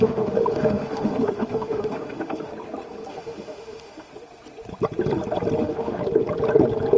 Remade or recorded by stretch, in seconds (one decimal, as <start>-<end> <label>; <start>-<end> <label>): 0.0-2.5 remade; 2.5-3.1 recorded; 3.1-4.1 remade; 4.1-5.6 recorded; 5.6-6.0 remade; 6.0-7.0 recorded